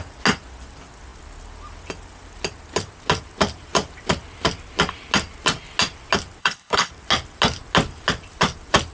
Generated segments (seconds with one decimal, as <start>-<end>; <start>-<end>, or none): 6.4-6.9